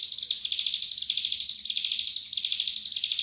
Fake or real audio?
real